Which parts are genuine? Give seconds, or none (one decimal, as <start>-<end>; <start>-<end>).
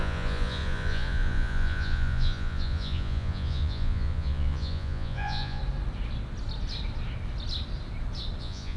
5.6-8.4